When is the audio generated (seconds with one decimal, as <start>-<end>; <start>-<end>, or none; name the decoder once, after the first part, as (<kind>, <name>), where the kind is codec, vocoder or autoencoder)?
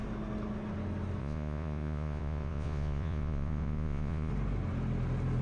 1.2-4.3 (vocoder, Vocos)